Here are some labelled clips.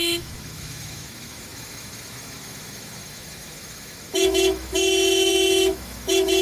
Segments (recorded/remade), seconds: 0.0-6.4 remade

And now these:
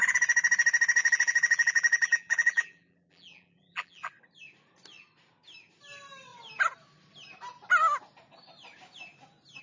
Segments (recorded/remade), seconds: 0.0-1.0 recorded; 1.0-4.1 remade; 4.1-9.6 recorded

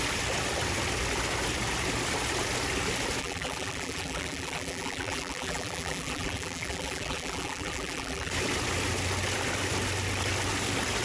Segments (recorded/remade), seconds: 0.0-3.2 recorded; 3.2-8.3 remade; 8.3-11.0 recorded

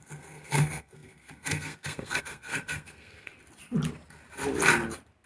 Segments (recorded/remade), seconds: 0.0-3.3 remade; 3.3-5.3 recorded

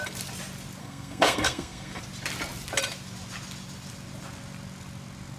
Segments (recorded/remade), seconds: 0.0-0.8 recorded; 0.8-2.0 remade; 2.0-5.4 recorded